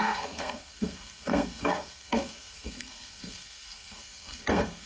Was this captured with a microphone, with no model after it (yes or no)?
no